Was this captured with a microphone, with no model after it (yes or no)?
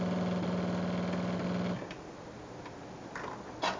yes